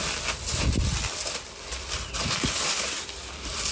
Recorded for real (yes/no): yes